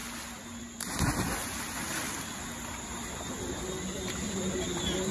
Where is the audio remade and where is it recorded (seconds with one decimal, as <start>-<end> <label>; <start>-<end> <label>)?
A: 0.0-5.1 recorded